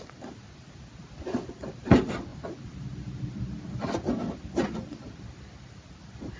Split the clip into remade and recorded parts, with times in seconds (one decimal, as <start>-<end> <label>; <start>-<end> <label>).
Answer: 0.0-6.4 recorded